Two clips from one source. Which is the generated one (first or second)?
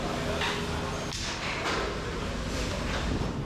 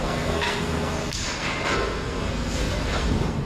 second